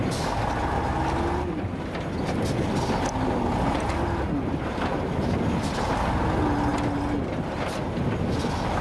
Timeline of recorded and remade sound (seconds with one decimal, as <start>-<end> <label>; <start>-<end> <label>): 0.0-8.8 recorded